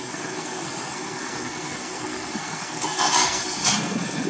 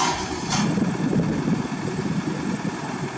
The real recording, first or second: second